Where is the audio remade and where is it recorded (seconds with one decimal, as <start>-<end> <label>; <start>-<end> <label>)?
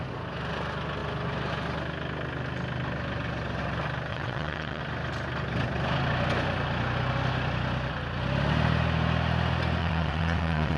0.0-4.1 recorded; 4.1-4.8 remade; 4.8-9.8 recorded; 9.8-10.8 remade